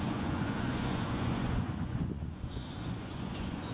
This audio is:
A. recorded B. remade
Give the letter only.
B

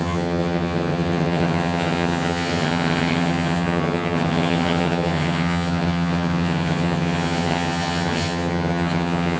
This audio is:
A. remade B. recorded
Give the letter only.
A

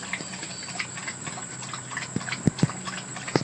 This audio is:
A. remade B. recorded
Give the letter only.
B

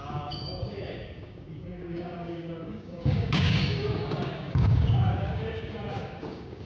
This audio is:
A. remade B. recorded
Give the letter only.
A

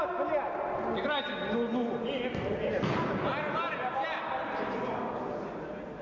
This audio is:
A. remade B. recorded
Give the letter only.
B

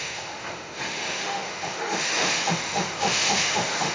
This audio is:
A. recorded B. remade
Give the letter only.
B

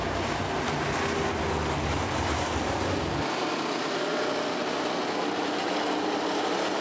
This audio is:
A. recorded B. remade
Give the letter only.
A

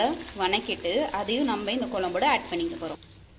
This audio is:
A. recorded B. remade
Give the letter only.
A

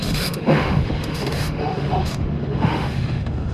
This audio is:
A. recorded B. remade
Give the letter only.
B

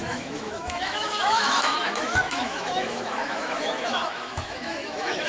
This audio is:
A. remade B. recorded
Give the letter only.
A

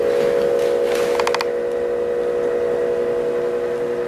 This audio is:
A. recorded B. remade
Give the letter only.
A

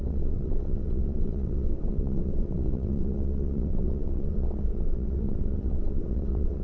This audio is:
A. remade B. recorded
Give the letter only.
A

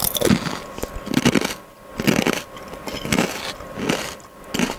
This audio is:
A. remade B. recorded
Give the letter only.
B